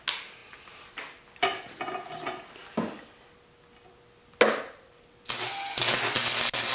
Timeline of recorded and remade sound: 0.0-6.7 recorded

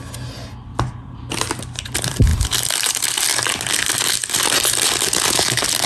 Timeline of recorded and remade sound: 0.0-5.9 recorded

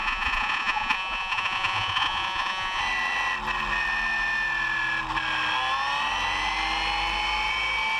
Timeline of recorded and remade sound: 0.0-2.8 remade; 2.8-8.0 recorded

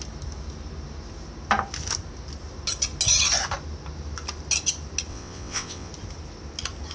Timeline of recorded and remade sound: 0.0-5.1 recorded; 5.1-5.9 remade; 5.9-6.9 recorded

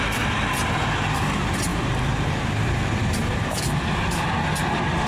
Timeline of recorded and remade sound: 0.0-1.7 recorded; 1.7-5.1 remade

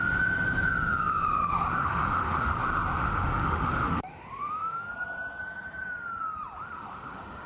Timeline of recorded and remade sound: 0.0-1.8 recorded; 1.8-2.6 remade; 2.6-3.0 recorded; 3.0-4.9 remade; 4.9-6.6 recorded; 6.6-7.5 remade

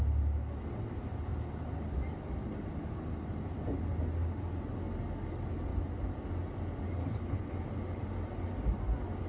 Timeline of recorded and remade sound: 0.0-7.0 recorded; 7.0-7.5 remade; 7.5-9.3 recorded

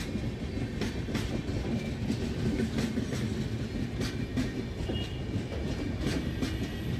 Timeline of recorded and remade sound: 0.0-7.0 recorded